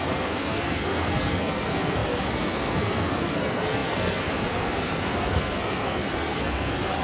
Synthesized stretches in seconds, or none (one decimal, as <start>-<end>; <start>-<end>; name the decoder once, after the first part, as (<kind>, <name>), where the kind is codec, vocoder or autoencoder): 0.0-7.0 (codec, SNAC)